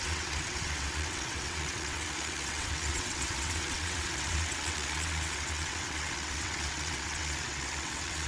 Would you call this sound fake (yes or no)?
yes